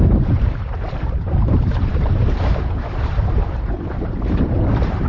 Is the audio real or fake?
fake